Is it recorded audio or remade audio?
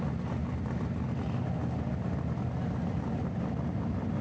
recorded